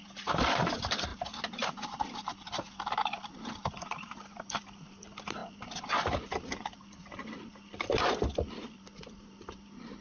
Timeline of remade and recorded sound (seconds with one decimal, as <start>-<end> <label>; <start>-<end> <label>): 0.0-10.0 recorded